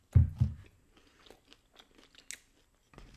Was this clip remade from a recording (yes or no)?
no